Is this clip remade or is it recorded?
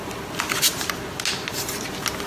recorded